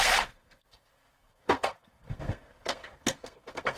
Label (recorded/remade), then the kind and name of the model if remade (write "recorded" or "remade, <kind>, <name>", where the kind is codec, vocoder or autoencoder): remade, codec, SNAC